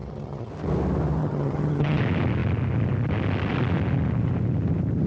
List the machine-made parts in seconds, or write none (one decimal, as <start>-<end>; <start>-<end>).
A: 0.0-0.5; 1.2-2.0